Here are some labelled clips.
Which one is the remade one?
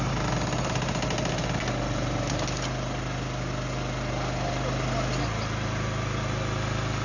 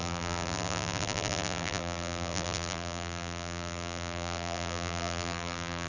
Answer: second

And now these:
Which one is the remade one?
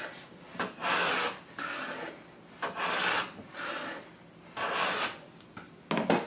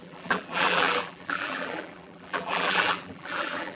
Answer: second